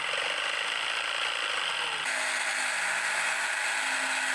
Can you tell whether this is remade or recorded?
recorded